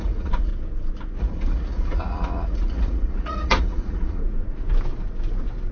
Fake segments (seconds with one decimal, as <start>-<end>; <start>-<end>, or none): 0.0-0.5; 1.2-4.2